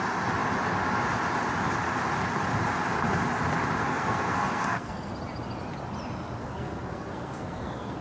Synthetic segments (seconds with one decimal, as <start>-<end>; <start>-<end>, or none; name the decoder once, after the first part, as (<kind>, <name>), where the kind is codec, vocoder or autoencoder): 3.8-5.1 (codec, SNAC); 6.4-8.0